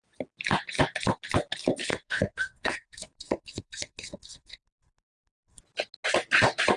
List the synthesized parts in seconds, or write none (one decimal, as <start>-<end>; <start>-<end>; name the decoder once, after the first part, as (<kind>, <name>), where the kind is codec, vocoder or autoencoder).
1.9-5.6 (codec, SNAC)

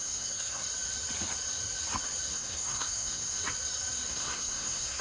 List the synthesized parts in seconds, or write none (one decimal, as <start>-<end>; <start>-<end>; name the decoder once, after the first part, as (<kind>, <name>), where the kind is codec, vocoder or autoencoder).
0.0-0.6 (codec, SNAC); 2.3-3.4; 4.1-5.0

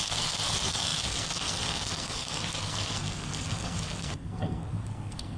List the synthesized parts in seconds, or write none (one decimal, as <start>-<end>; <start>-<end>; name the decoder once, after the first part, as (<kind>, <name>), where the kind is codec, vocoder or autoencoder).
0.0-5.4 (codec, SNAC)

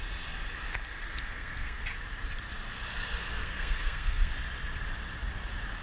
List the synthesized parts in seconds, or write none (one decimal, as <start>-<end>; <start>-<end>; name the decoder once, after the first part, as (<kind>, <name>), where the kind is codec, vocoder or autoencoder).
1.1-1.8 (codec, SNAC); 3.2-4.3